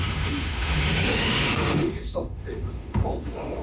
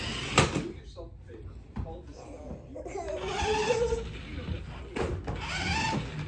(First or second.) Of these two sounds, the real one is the second